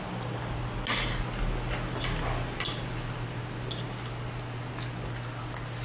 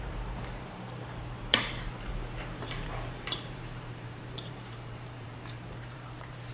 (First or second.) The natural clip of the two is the first